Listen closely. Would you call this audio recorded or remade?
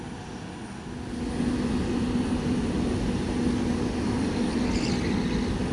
recorded